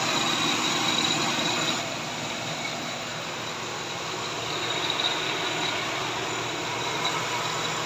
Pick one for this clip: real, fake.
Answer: real